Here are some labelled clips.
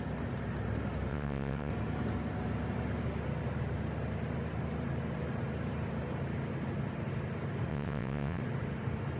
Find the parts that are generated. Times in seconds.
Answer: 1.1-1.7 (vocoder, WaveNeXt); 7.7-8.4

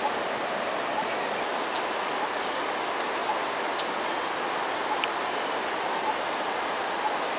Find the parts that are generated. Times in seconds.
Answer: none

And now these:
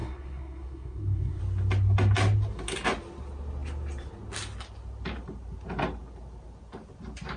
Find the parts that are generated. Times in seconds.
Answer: 0.0-1.4 (codec, SNAC)